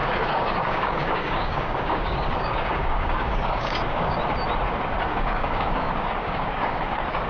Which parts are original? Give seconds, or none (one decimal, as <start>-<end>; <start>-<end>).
4.2-5.1